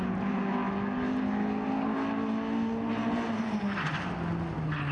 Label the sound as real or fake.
real